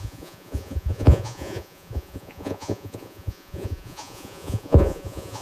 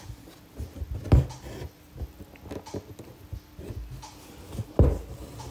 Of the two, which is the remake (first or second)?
first